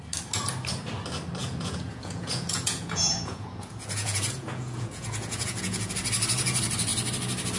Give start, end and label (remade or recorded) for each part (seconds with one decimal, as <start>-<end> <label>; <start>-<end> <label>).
0.0-1.4 recorded; 1.4-5.9 remade; 5.9-7.6 recorded